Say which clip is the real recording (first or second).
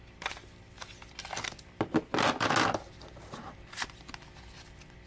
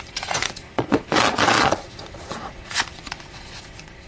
first